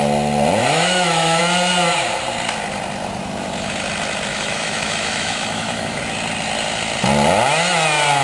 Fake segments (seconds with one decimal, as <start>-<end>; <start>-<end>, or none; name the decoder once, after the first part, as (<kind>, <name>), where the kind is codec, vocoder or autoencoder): 0.6-1.4 (autoencoder, DAC-VAE); 4.3-6.0